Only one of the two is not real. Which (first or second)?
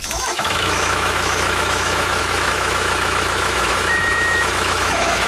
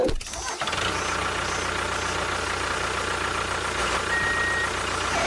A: first